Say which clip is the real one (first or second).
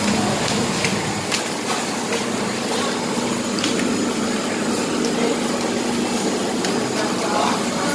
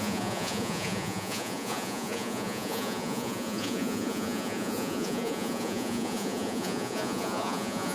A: first